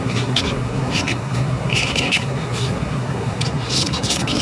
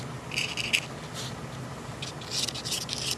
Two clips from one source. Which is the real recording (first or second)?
second